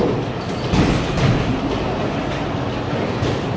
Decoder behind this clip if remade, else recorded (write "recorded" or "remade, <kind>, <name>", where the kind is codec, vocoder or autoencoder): recorded